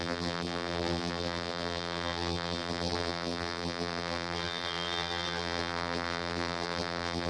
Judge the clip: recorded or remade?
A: remade